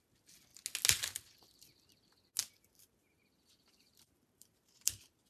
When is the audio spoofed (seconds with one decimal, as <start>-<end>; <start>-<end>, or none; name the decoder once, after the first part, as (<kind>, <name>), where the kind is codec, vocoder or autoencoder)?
3.0-5.3 (vocoder, BigVGAN v2)